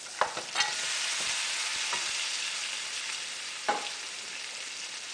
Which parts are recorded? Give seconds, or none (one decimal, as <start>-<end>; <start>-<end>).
0.0-5.1